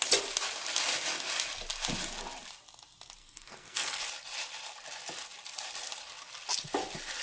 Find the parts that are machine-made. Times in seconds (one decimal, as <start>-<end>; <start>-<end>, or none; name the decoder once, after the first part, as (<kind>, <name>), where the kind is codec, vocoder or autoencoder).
3.2-4.0 (codec, SNAC)

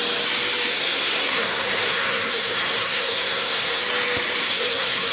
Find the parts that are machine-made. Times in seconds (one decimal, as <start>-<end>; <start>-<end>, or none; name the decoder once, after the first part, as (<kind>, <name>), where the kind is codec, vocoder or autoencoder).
0.7-3.8 (codec, SNAC); 4.4-5.1